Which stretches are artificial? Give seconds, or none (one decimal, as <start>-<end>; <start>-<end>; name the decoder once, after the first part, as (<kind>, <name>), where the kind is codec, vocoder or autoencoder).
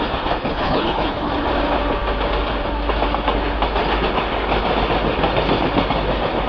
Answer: 0.4-1.3 (codec, HILCodec)